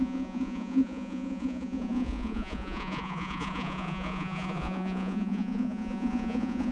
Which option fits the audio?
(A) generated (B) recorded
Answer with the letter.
A